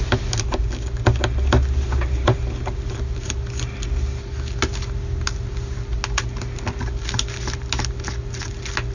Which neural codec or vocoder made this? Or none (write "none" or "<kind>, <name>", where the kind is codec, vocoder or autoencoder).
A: none